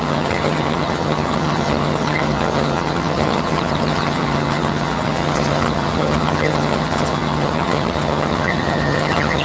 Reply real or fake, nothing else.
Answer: fake